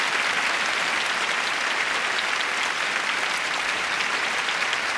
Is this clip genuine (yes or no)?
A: yes